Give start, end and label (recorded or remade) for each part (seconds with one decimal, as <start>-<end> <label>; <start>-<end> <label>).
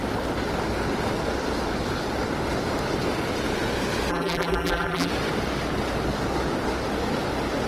0.0-4.1 recorded; 4.1-5.1 remade; 5.1-7.7 recorded